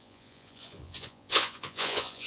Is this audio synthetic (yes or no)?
yes